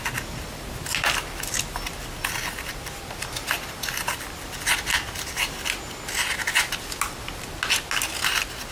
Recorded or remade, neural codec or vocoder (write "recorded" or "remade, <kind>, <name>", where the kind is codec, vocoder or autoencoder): recorded